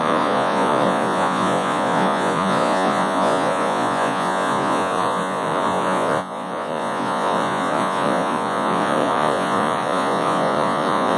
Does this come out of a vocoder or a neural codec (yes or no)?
yes